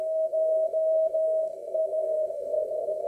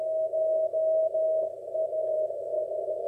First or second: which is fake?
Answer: first